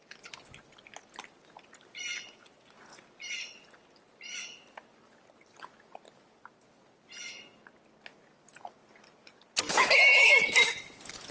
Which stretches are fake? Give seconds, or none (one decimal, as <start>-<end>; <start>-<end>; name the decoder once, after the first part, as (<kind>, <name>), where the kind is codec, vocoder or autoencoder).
none